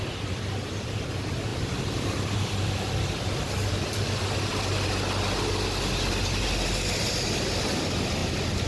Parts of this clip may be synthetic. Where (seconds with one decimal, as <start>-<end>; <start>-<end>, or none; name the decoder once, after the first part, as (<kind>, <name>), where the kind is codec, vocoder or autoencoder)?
1.5-4.2 (vocoder, BigVGAN v2)